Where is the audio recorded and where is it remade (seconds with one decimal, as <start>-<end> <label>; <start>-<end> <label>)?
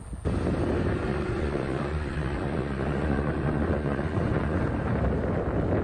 0.0-1.1 recorded; 1.1-4.6 remade; 4.6-5.8 recorded